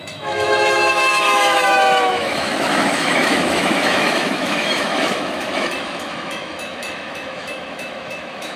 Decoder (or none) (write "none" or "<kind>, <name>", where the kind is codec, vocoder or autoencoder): autoencoder, DAC-VAE